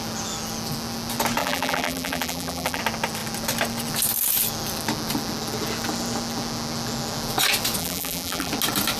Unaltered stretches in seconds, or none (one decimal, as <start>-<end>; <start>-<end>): 0.0-1.4; 2.8-7.8; 8.5-9.0